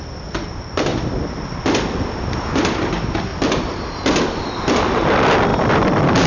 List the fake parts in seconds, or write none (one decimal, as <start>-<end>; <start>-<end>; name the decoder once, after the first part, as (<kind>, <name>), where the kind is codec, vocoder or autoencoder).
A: 0.9-1.4 (vocoder, BigVGAN v2); 3.3-4.5; 5.5-6.3